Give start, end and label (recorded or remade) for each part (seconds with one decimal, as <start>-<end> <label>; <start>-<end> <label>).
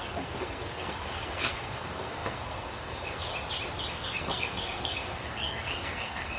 0.0-3.3 remade; 3.3-3.9 recorded; 3.9-6.4 remade